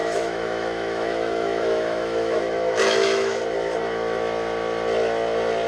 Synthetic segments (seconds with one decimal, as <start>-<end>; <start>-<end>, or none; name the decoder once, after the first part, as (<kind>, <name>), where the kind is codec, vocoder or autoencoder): 0.0-3.4 (autoencoder, DAC-VAE)